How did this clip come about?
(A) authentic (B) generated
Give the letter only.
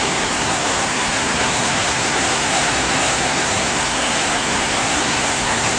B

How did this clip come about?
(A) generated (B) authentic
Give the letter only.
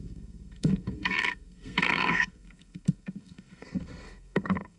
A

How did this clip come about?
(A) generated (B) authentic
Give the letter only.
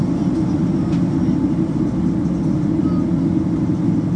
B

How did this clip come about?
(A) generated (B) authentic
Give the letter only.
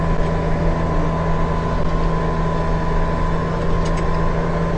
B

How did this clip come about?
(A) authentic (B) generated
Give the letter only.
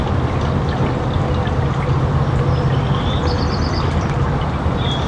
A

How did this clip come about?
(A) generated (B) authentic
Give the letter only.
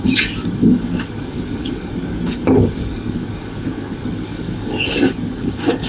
A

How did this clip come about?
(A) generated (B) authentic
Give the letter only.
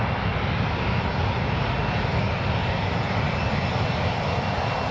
B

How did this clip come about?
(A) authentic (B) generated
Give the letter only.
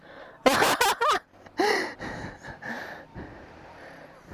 A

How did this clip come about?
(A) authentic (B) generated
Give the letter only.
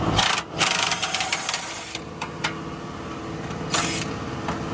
A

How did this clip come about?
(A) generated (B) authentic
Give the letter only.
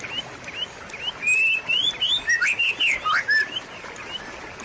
B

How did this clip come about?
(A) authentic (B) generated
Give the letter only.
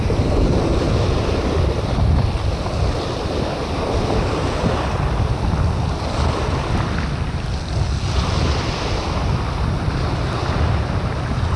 A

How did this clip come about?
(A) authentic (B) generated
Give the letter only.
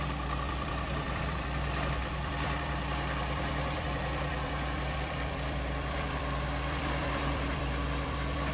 B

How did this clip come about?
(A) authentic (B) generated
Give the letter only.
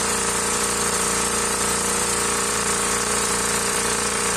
B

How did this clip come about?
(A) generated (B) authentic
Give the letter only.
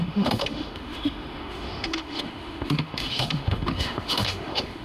A